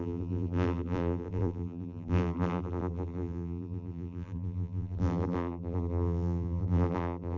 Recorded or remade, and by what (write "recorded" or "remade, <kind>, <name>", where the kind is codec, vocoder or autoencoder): remade, vocoder, BigVGAN v2